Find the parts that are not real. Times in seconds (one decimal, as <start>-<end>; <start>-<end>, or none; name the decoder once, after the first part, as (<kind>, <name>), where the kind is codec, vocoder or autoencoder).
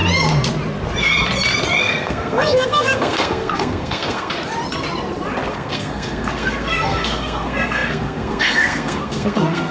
1.8-4.3 (codec, SNAC); 5.5-9.7